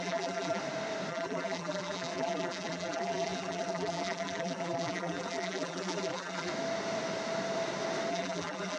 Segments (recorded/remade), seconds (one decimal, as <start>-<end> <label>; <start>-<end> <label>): 0.0-0.6 remade; 0.6-1.1 recorded; 1.1-6.5 remade; 6.5-8.1 recorded; 8.1-8.8 remade